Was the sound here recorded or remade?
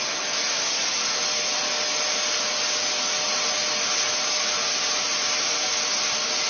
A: recorded